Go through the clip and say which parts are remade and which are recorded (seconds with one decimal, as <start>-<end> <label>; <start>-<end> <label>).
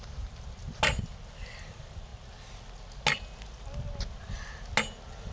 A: 0.0-5.3 recorded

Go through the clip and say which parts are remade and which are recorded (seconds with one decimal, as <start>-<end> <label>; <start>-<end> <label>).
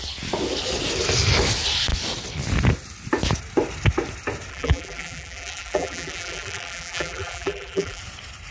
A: 0.0-4.5 recorded; 4.5-8.0 remade; 8.0-8.5 recorded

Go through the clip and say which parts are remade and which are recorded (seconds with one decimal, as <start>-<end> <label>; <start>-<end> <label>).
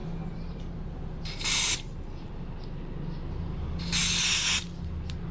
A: 0.0-2.3 remade; 2.3-5.3 recorded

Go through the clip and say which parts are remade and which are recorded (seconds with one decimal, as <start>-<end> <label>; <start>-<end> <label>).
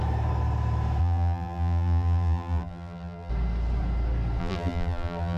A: 0.0-1.0 recorded; 1.0-3.3 remade; 3.3-4.4 recorded; 4.4-5.4 remade